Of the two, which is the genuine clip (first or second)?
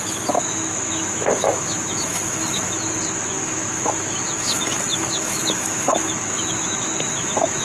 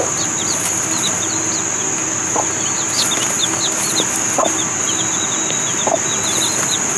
second